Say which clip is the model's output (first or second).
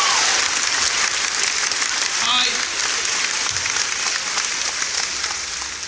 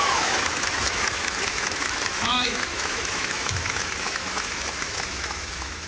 second